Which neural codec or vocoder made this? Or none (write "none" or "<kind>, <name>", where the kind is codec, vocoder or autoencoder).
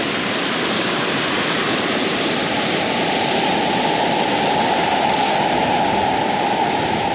vocoder, BigVGAN v2